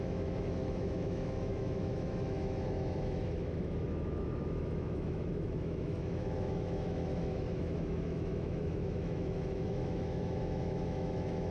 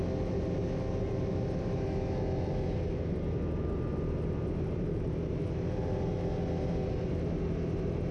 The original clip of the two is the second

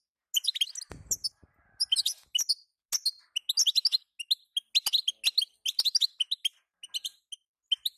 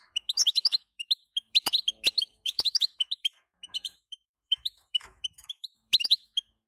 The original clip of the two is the first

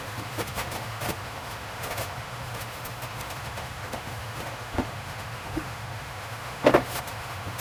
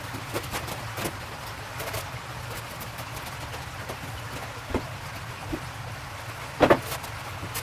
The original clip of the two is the second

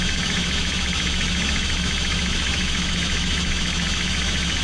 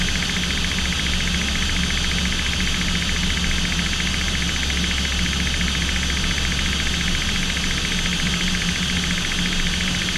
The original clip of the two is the second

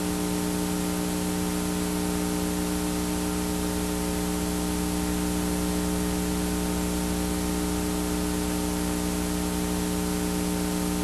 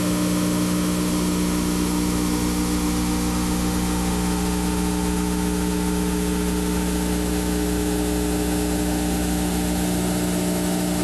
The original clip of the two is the first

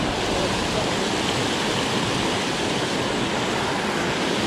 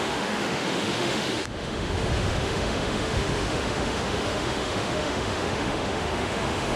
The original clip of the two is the first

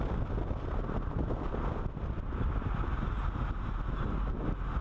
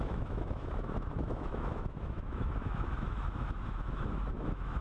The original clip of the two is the first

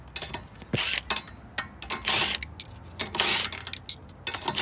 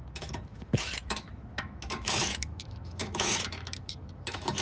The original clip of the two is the first